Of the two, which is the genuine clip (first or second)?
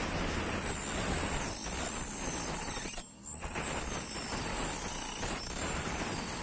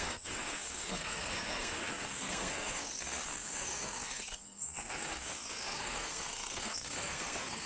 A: first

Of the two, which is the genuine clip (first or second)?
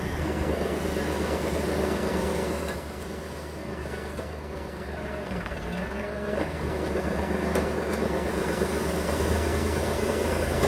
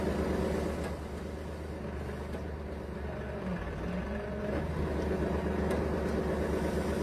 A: second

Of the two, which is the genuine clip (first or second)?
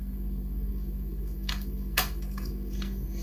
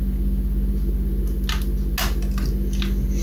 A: second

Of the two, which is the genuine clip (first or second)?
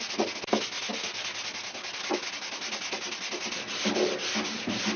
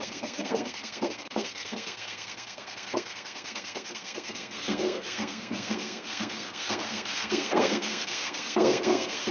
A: first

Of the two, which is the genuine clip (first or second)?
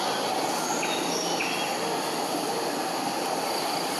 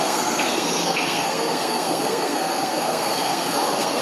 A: first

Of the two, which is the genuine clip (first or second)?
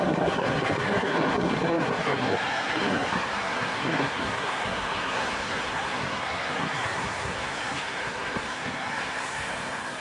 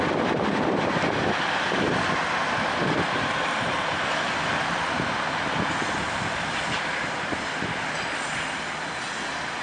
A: second